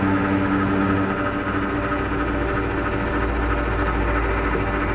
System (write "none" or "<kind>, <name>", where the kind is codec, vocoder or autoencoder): none